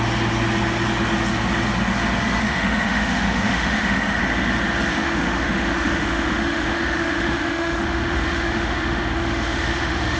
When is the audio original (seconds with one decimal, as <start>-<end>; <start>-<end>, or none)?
0.0-2.4; 4.2-4.9